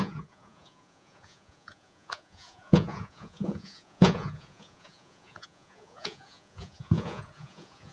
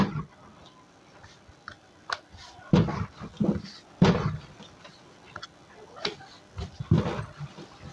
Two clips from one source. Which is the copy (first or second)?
first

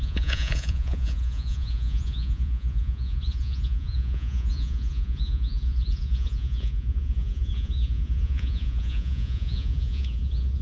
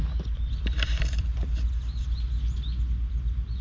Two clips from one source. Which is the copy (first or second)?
first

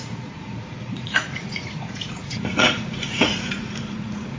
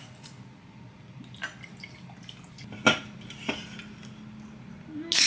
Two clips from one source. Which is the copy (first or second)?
first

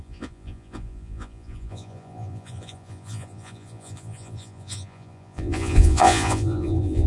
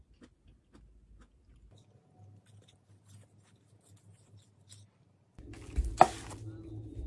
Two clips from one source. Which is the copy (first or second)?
first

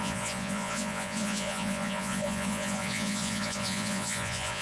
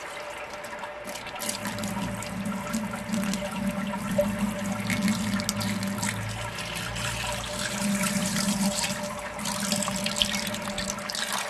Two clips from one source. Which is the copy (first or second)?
first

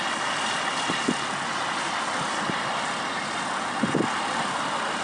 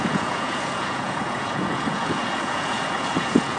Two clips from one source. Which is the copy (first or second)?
second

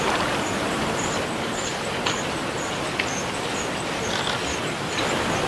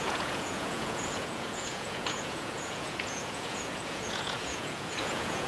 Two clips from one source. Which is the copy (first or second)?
second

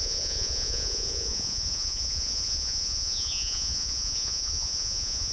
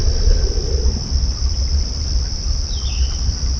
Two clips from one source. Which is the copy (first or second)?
first